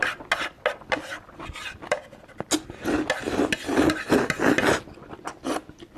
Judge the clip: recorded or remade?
recorded